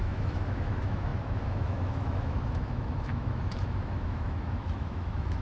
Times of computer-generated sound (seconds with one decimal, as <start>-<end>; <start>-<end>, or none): 0.0-5.4